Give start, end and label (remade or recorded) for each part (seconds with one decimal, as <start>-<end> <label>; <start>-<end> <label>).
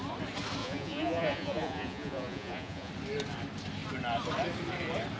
0.0-0.6 recorded; 0.6-2.9 remade; 2.9-5.2 recorded